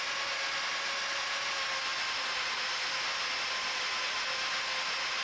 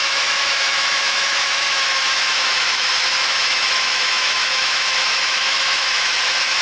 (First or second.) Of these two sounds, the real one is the first